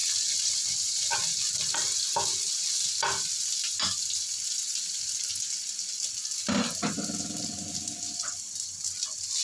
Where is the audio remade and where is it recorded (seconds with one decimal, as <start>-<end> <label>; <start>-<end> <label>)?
0.0-4.7 recorded; 4.7-5.3 remade; 5.3-9.4 recorded